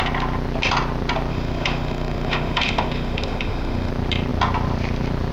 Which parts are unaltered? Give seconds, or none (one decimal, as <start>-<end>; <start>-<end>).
0.0-1.3; 3.9-5.3